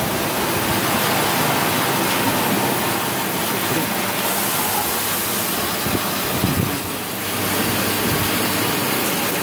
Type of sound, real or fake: real